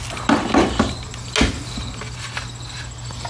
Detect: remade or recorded recorded